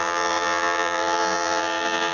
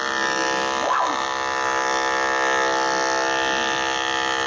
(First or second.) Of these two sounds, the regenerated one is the first